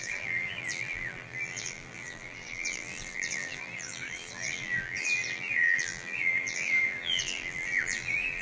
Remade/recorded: remade